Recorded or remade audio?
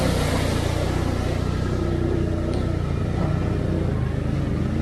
recorded